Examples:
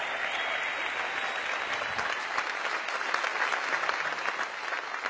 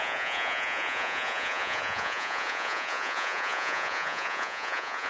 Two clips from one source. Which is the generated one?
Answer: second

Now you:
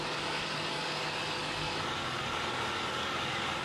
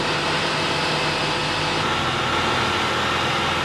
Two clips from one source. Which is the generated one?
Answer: first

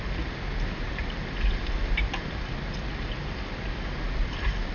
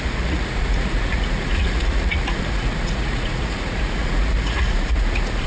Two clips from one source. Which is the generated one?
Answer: second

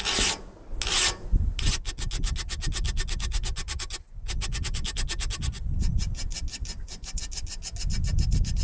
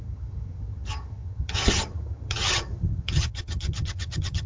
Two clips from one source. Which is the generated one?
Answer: second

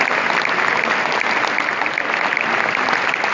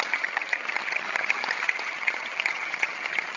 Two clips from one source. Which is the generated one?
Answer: second